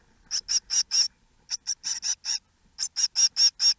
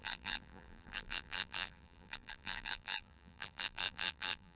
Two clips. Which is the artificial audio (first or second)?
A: second